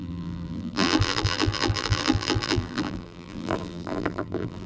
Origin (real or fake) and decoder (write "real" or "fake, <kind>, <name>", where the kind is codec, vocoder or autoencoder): fake, vocoder, BigVGAN v2